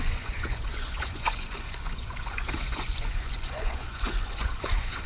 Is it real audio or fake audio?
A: fake